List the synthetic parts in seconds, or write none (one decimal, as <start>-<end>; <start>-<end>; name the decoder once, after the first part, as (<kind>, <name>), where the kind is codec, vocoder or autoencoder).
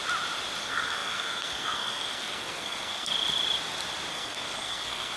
0.6-3.1 (codec, SNAC); 4.1-5.2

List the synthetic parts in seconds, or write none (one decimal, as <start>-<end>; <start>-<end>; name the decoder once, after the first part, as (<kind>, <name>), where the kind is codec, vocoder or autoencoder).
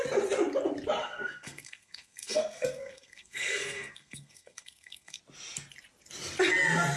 1.0-5.2 (codec, SNAC)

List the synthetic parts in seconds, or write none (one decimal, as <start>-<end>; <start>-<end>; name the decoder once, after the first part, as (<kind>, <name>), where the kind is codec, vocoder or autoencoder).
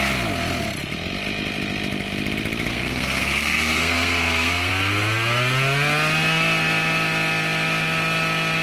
2.7-4.7 (codec, SNAC)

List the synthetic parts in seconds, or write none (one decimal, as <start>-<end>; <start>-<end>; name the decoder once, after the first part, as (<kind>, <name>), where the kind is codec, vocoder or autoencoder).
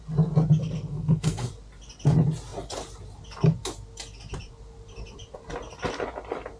0.6-1.5 (codec, SNAC)